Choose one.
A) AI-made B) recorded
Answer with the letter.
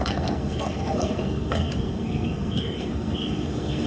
A